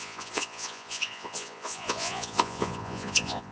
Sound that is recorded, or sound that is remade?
remade